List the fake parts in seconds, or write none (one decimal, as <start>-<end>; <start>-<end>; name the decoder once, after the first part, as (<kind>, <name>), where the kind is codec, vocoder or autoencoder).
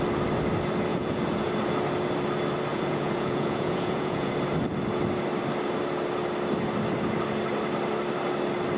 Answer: 0.9-1.5 (vocoder, Vocos); 2.7-4.3